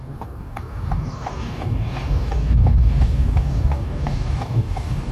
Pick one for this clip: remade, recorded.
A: remade